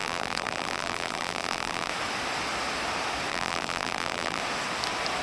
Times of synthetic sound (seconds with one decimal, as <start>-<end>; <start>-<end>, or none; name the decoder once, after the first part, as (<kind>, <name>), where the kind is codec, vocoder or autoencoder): 0.0-1.9 (vocoder, BigVGAN v2); 3.3-4.4